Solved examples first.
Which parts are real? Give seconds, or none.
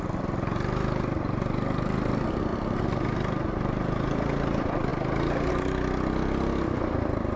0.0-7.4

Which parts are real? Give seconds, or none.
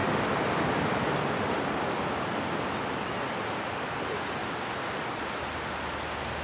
0.0-4.4; 5.2-6.4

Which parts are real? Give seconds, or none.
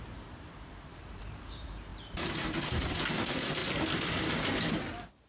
3.6-4.7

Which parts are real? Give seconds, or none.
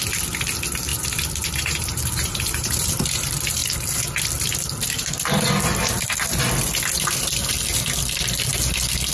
0.0-0.9; 2.9-9.1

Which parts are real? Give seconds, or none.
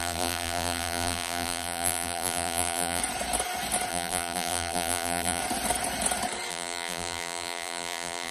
3.0-3.9; 5.4-6.5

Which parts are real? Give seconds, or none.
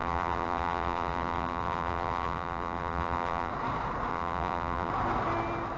3.5-4.1; 4.9-5.8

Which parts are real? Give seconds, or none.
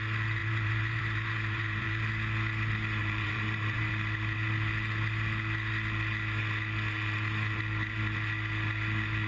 0.0-0.4; 2.1-3.0; 3.9-9.3